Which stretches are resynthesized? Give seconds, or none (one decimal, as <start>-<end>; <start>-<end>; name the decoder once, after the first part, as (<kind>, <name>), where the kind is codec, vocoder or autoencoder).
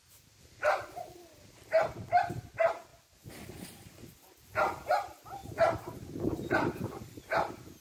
0.0-2.9 (vocoder, BigVGAN v2); 3.7-5.4; 6.1-7.8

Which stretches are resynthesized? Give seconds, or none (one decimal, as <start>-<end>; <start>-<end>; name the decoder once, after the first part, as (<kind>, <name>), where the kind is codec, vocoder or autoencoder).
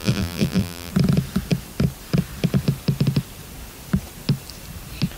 0.0-0.9 (vocoder, BigVGAN v2)